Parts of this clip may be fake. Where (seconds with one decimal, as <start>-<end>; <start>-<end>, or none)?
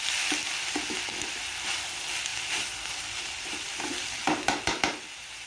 none